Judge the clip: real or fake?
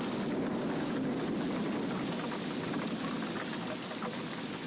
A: real